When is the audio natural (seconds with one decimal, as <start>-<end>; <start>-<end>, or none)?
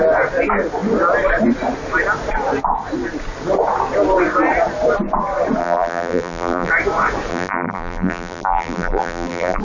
0.0-5.6; 6.7-7.3